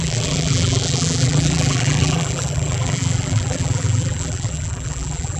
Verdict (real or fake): fake